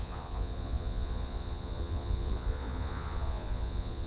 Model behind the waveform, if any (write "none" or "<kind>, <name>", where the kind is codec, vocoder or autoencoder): vocoder, Vocos